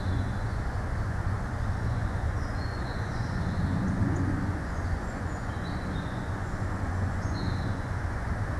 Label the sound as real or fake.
fake